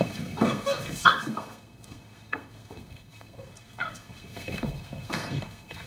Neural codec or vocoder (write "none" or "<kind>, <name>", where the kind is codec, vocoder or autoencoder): codec, SNAC